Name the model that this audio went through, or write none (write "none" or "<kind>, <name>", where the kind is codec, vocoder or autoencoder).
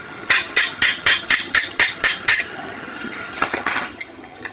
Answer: vocoder, HiFi-GAN